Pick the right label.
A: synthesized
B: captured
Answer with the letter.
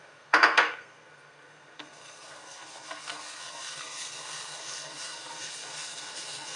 A